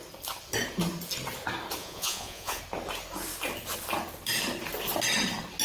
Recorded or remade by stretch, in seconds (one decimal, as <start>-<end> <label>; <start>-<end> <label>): 0.0-1.8 recorded; 1.8-2.6 remade; 2.6-5.6 recorded